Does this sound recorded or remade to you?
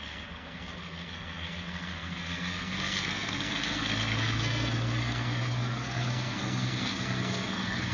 remade